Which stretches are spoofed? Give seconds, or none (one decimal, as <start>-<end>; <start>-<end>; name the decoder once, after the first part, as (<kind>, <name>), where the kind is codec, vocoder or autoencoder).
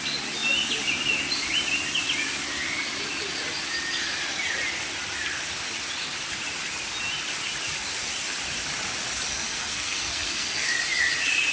9.3-10.7 (codec, SNAC)